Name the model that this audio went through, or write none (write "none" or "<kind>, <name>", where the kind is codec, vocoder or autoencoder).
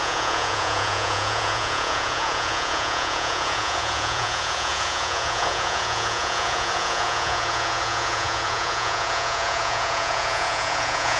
vocoder, Vocos